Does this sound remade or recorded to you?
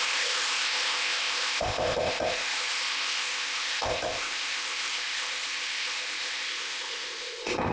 remade